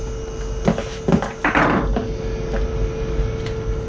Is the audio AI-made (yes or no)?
no